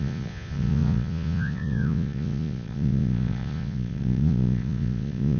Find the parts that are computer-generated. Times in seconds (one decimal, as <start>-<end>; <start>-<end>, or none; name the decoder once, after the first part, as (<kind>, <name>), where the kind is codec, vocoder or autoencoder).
0.0-5.4 (vocoder, Vocos)